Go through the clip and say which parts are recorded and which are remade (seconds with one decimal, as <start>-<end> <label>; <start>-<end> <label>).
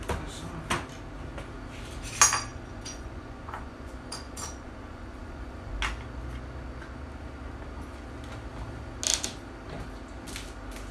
0.0-2.5 recorded; 2.5-5.8 remade; 5.8-10.9 recorded